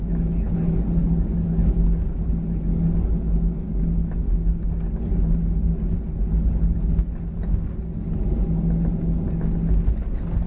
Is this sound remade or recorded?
recorded